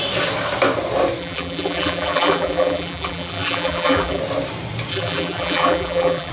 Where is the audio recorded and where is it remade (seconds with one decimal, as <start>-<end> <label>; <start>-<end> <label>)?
0.0-1.2 recorded; 1.2-4.2 remade; 4.2-4.9 recorded; 4.9-6.3 remade